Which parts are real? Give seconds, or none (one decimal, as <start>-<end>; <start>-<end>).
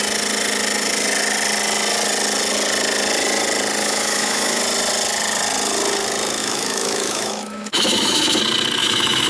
0.0-3.8; 4.6-6.4; 8.4-8.8